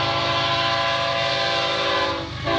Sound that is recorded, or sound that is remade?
recorded